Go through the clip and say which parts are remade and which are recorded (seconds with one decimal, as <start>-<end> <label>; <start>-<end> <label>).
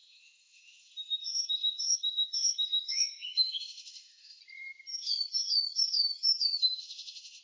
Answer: 0.0-4.4 remade; 4.4-4.9 recorded; 4.9-7.4 remade